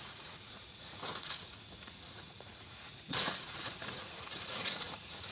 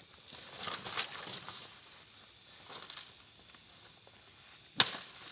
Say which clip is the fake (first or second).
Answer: first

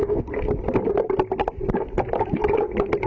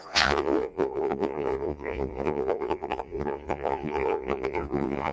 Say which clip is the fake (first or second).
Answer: second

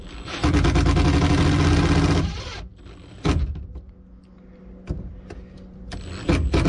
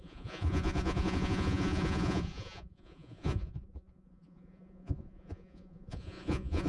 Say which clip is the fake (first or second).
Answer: second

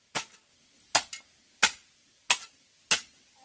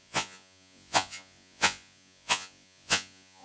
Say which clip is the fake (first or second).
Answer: second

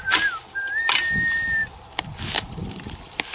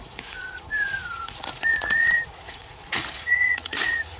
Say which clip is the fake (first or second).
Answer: second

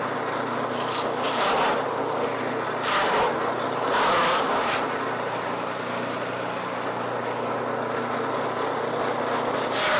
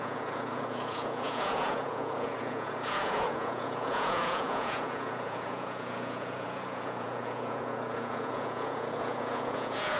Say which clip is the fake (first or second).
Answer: second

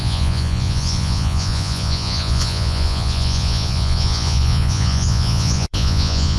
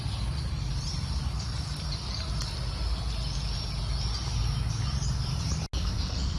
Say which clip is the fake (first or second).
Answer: first